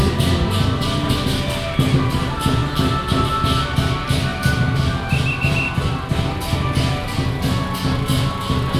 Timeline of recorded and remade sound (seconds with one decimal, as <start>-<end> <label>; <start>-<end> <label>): 0.0-8.8 recorded